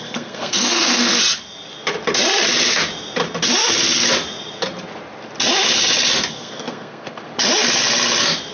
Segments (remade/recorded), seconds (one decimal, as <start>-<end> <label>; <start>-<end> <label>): 0.0-1.2 remade; 1.2-6.3 recorded; 6.3-7.3 remade; 7.3-8.5 recorded